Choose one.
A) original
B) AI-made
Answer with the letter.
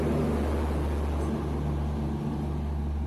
A